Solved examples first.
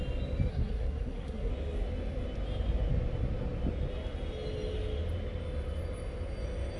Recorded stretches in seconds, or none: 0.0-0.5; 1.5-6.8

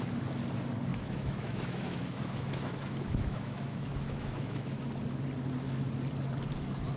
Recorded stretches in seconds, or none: 0.0-0.9; 4.8-7.0

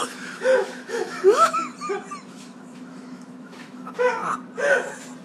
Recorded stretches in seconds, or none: 1.7-2.3; 4.2-5.2

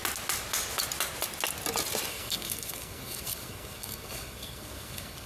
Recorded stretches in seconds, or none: 0.0-2.1

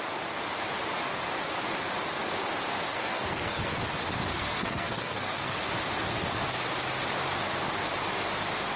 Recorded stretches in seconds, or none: 0.0-2.9; 3.8-4.3; 5.6-8.8